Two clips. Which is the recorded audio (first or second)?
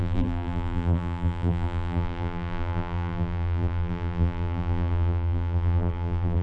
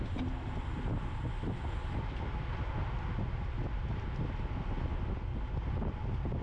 second